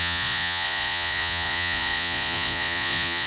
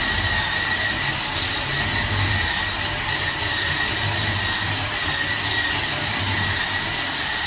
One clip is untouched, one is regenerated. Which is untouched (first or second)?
second